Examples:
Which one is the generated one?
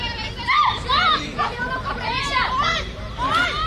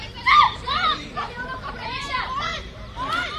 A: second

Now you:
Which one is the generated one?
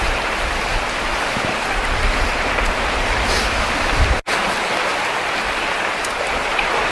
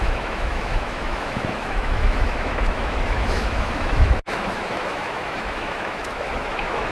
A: second